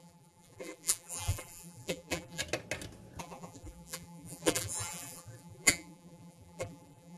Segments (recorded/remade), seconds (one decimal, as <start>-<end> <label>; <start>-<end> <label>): 0.0-2.4 remade; 2.4-3.2 recorded; 3.2-7.2 remade